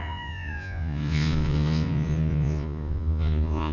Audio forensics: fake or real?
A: fake